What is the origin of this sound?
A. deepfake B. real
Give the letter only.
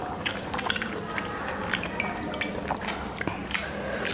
B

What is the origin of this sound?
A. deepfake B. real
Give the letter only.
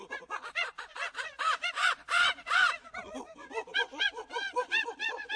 A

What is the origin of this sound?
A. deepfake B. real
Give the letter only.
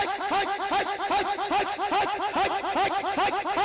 B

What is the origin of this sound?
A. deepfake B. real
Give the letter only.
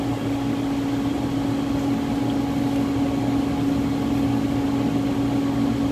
B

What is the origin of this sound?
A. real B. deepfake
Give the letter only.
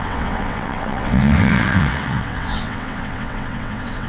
B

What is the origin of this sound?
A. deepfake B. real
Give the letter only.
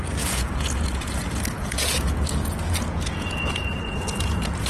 A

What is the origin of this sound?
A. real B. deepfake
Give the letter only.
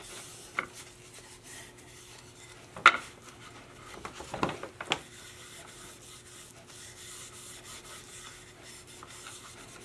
A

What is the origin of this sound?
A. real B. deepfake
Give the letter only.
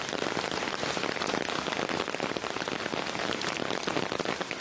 A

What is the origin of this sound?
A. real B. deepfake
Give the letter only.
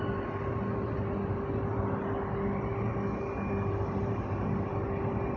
A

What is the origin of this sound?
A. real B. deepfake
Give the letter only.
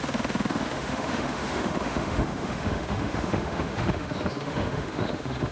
B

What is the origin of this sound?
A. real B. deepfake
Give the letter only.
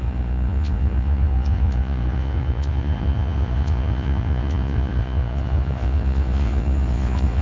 B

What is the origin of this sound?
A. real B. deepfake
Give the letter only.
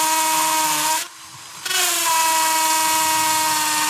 A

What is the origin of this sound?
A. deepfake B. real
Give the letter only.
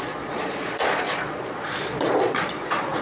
A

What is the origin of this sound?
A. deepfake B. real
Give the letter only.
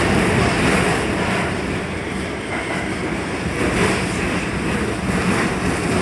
B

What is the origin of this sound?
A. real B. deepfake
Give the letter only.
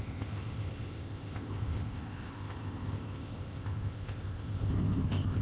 B